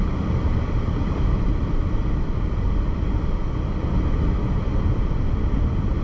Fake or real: fake